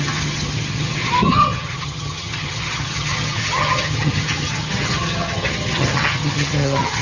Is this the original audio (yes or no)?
no